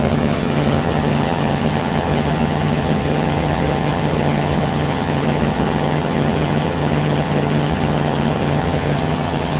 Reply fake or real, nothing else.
fake